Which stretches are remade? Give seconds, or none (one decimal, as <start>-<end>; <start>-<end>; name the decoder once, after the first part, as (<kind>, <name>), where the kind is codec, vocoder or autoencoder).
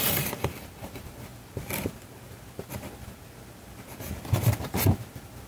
0.0-1.3 (vocoder, BigVGAN v2); 4.2-5.5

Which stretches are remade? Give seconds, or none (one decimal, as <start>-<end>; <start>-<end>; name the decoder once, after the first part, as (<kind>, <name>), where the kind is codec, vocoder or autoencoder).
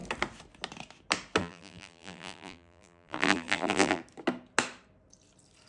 1.4-4.0 (vocoder, BigVGAN v2)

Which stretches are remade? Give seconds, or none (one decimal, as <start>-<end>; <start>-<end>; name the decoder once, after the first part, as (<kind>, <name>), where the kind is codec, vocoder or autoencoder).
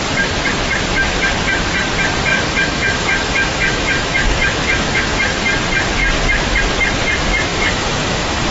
2.3-5.0 (autoencoder, DAC-VAE); 7.5-8.5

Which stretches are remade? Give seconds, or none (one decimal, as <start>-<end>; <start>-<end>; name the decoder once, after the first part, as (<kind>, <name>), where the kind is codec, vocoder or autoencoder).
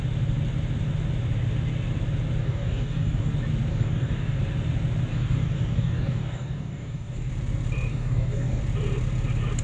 2.4-3.3 (codec, DAC); 3.7-4.4; 5.1-7.3; 7.9-8.6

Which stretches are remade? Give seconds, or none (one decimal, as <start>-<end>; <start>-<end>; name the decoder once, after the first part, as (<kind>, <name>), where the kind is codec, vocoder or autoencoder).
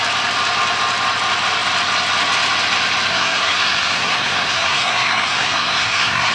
3.1-6.3 (codec, SNAC)